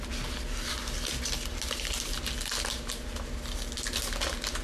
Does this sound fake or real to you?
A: real